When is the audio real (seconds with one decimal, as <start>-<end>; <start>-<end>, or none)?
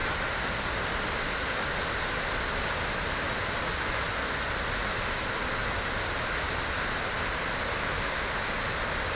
0.0-3.7; 4.5-9.2